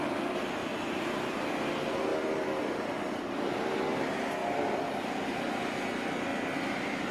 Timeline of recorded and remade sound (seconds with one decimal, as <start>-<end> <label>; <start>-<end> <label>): 0.0-0.6 recorded; 0.6-1.4 remade; 1.4-2.1 recorded; 2.1-2.6 remade; 2.6-7.1 recorded